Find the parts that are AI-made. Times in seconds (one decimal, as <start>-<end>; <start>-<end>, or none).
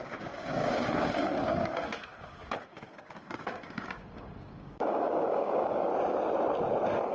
0.0-5.9